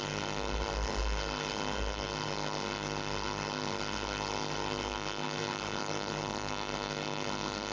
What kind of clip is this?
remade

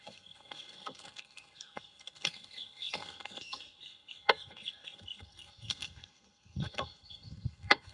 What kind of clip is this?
remade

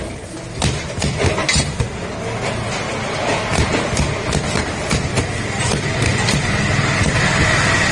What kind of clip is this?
recorded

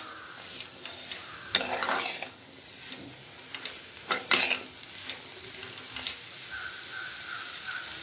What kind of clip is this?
recorded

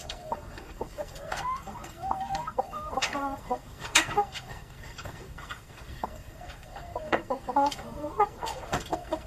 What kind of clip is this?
remade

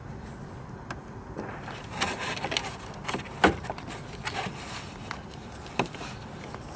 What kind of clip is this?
recorded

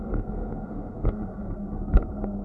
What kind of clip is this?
remade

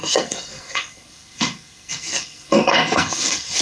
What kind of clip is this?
remade